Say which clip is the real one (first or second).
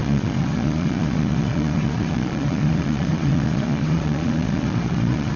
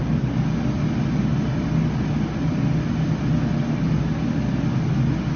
second